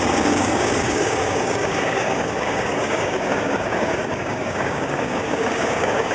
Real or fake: fake